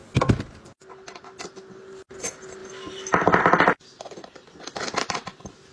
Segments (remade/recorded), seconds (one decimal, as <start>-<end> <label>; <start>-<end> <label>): 0.0-5.7 recorded